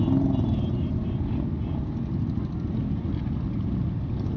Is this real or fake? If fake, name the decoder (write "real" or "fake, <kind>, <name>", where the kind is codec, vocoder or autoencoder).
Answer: real